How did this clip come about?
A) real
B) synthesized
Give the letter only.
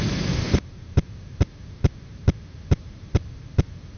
B